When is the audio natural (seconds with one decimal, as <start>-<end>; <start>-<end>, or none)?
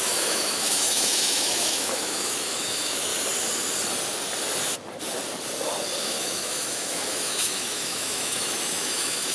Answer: 3.1-6.0